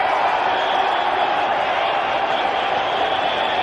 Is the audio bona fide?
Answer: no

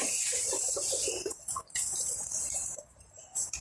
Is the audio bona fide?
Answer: no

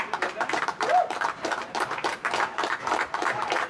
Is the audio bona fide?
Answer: no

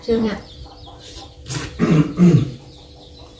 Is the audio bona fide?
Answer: no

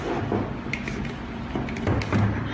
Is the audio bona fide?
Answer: yes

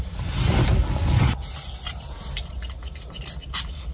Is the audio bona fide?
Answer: yes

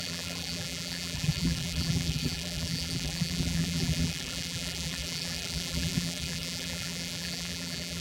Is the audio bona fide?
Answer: no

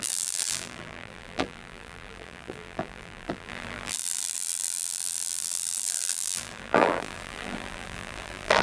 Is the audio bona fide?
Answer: no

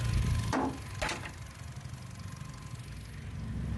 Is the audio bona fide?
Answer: yes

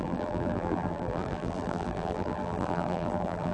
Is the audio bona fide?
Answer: no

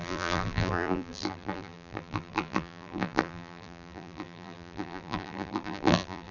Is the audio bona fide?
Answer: no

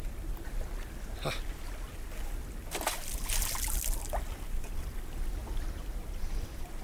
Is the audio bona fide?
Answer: yes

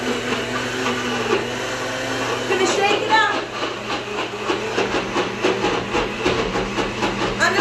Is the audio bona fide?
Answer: yes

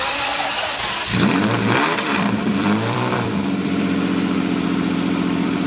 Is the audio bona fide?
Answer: no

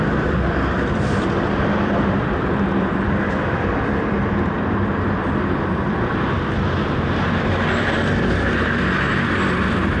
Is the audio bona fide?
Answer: no